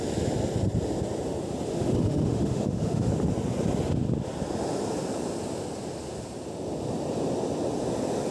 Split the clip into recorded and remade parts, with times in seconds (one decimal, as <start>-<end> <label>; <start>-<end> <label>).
0.0-1.7 recorded; 1.7-3.1 remade; 3.1-8.3 recorded